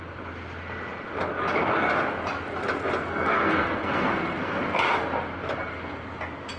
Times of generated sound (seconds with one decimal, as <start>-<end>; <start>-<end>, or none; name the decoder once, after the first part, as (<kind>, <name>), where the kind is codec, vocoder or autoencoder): 3.1-4.6 (codec, SNAC)